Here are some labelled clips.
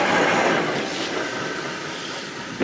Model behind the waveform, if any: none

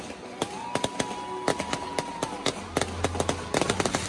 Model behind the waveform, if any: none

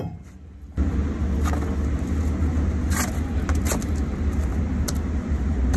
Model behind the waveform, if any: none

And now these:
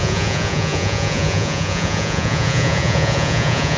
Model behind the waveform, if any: vocoder, Vocos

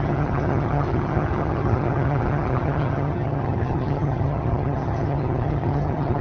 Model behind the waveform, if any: vocoder, HiFi-GAN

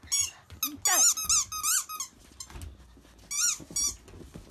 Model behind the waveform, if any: none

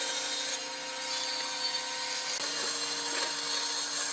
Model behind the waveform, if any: none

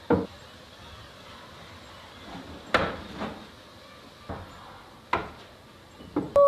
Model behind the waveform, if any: none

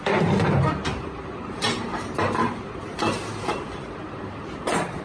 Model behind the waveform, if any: vocoder, BigVGAN v2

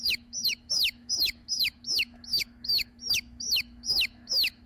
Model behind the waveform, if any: autoencoder, DAC-VAE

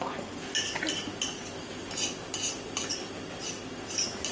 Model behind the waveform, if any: none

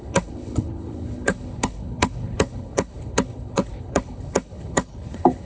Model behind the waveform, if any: codec, HILCodec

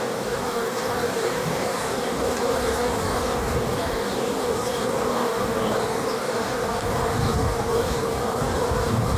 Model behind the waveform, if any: codec, DAC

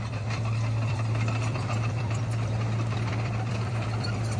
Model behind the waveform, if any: vocoder, BigVGAN v2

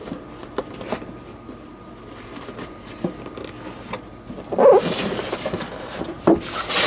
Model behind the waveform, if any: none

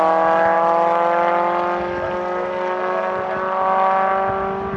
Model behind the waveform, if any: none